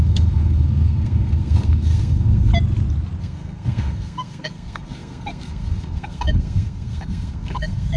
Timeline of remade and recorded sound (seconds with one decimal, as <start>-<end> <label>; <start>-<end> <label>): 0.0-2.5 remade; 2.5-3.2 recorded; 3.2-8.0 remade